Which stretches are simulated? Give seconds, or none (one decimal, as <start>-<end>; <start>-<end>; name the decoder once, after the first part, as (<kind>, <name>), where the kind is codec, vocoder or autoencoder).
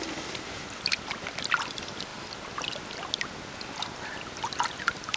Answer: none